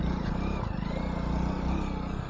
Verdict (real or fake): real